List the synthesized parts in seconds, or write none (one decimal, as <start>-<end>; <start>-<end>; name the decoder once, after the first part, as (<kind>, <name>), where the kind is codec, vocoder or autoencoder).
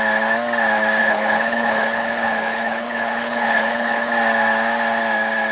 1.0-4.1 (codec, HILCodec)